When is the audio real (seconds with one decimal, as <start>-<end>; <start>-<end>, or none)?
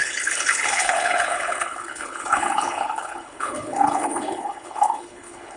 none